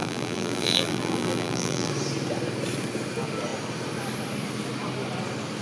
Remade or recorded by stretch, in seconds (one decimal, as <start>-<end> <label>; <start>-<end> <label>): 0.0-1.9 remade; 1.9-5.6 recorded

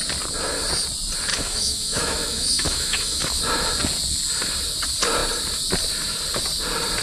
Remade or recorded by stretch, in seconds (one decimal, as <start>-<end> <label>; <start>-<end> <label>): 0.0-1.3 recorded; 1.3-3.4 remade; 3.4-7.0 recorded

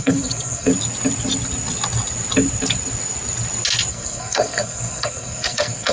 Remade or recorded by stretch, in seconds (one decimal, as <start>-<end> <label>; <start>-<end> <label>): 0.0-0.7 remade; 0.7-3.9 recorded; 3.9-5.9 remade

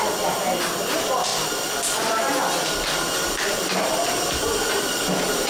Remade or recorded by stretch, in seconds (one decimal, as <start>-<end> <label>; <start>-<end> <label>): 0.0-5.5 recorded

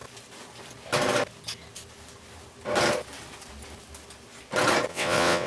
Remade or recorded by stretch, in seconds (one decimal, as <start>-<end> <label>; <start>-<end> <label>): 0.0-4.9 recorded; 4.9-5.5 remade

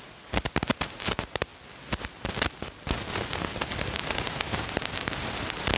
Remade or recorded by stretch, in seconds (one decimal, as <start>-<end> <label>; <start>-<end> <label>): 0.0-1.5 remade; 1.5-3.6 recorded; 3.6-5.8 remade

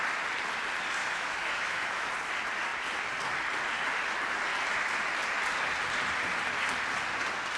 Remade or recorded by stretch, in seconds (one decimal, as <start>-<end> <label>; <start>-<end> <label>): 0.0-1.0 recorded; 1.0-2.1 remade; 2.1-7.6 recorded

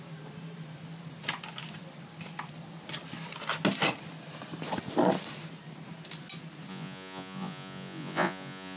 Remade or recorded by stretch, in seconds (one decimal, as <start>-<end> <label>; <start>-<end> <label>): 0.0-6.7 recorded; 6.7-8.8 remade